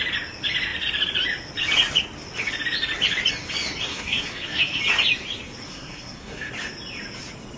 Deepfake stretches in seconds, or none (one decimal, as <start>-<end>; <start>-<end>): 3.9-4.8; 5.7-6.5